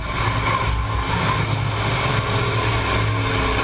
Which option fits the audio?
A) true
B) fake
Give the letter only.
A